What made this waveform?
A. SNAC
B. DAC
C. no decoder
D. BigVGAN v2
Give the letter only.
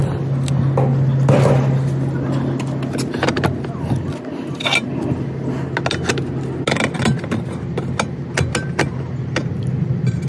C